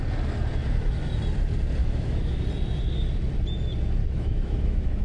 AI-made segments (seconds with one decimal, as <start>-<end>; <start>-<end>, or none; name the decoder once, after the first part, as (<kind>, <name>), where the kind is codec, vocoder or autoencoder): 0.6-1.2 (autoencoder, DAC-VAE); 1.8-2.4; 4.0-5.0